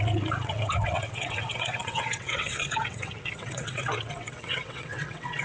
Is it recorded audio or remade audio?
remade